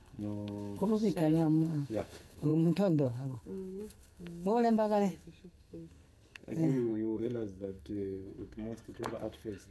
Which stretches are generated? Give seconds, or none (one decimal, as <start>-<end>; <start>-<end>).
0.0-9.7